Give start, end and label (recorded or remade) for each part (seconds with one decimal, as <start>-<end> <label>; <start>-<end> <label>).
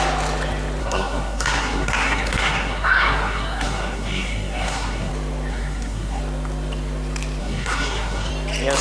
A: 0.0-0.8 recorded; 0.8-5.1 remade; 5.1-5.5 recorded; 5.5-6.2 remade; 6.2-7.4 recorded; 7.4-8.3 remade; 8.3-8.8 recorded